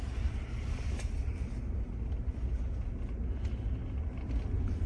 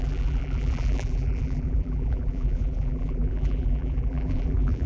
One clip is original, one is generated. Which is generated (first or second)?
second